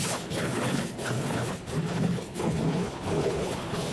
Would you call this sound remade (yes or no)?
yes